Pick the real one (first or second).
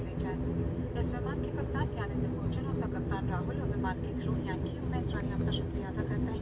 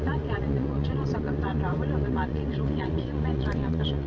first